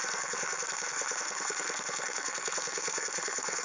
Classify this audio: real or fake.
fake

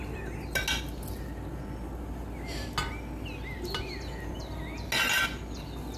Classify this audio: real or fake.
real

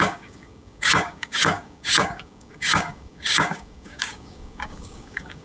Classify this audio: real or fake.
fake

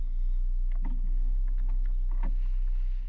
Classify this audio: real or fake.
real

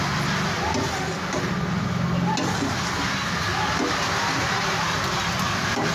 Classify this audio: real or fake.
real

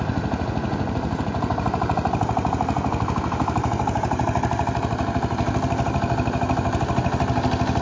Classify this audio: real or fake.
real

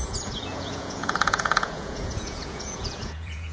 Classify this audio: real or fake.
fake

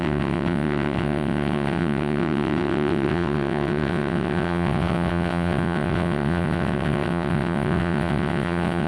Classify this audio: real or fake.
fake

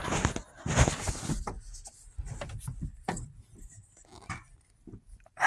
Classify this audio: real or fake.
real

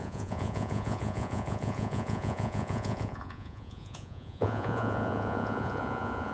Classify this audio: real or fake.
fake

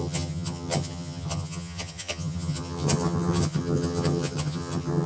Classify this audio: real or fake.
fake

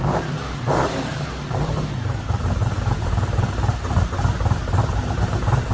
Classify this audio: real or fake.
fake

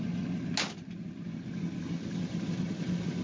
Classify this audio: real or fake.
real